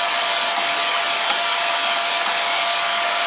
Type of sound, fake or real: fake